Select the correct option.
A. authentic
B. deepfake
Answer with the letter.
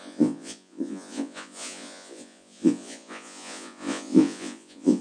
B